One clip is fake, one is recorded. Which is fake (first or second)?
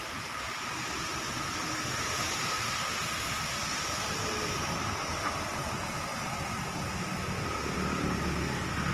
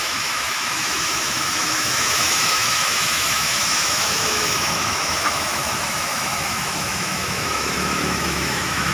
second